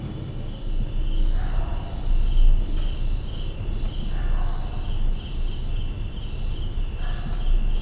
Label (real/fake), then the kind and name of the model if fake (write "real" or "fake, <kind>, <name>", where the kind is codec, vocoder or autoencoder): real